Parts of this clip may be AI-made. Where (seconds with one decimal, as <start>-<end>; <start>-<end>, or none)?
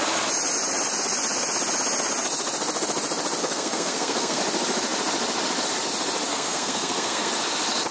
3.4-4.4; 6.3-7.3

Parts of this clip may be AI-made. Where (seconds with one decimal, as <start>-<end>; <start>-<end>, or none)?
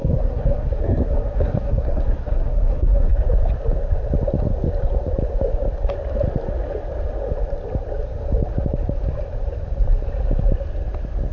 0.0-3.1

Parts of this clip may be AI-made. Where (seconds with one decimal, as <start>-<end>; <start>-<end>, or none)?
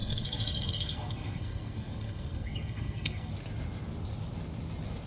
0.0-3.3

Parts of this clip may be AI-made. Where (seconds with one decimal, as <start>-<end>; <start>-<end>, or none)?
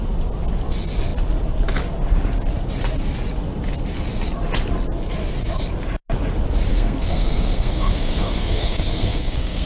6.7-9.7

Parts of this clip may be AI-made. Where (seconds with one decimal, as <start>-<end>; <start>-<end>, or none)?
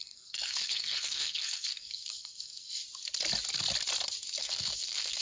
0.0-2.8; 4.4-5.2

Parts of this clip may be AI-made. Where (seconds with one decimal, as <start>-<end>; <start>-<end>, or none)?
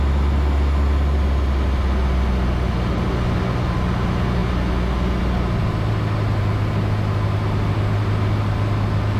none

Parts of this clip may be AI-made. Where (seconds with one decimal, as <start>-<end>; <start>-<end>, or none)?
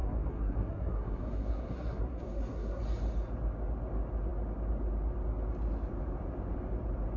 0.0-2.8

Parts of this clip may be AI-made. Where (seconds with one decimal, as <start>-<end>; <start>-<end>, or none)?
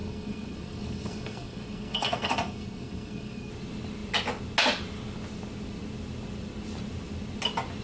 0.0-3.5